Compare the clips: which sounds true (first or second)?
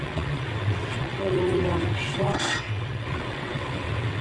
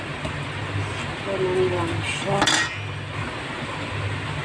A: second